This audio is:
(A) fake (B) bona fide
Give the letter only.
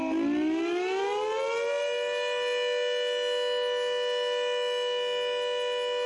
B